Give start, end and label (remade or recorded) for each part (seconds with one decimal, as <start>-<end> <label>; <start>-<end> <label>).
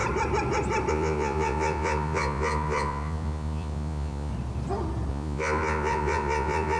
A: 0.0-0.9 recorded; 0.9-4.3 remade; 4.3-5.1 recorded; 5.1-6.8 remade